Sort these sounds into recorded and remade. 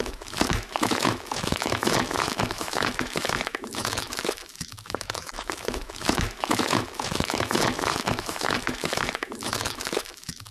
remade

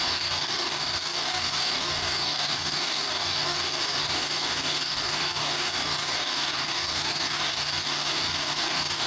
remade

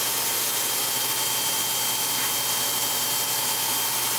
recorded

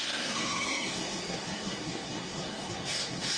remade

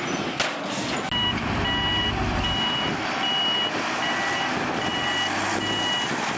recorded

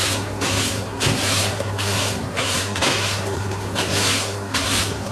remade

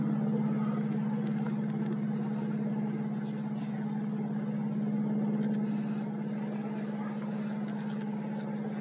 recorded